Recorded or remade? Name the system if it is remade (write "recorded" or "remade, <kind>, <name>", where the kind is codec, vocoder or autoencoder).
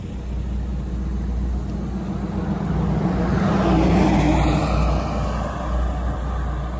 recorded